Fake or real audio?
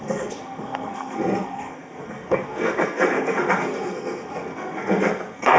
fake